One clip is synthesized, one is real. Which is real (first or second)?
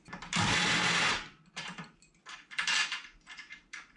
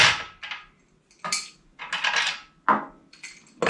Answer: second